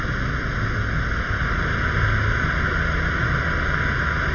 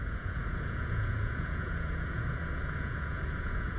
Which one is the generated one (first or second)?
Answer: second